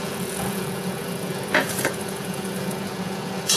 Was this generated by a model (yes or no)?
yes